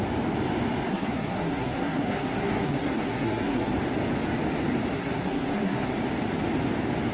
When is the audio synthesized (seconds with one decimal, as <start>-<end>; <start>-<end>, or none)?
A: 0.9-3.7; 4.9-5.9